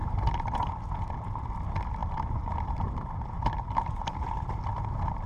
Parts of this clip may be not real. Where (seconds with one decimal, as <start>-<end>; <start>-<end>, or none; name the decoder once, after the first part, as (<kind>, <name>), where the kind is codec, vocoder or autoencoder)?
0.0-0.8 (vocoder, BigVGAN v2); 2.0-4.4